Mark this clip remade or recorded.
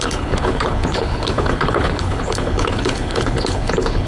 remade